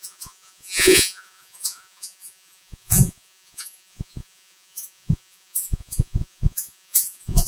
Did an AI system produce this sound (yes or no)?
yes